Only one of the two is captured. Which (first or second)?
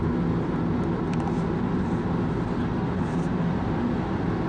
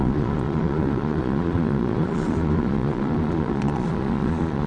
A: first